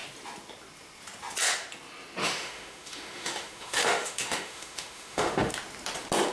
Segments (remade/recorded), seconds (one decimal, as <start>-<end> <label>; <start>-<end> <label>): 0.0-2.2 recorded; 2.2-5.5 remade; 5.5-6.3 recorded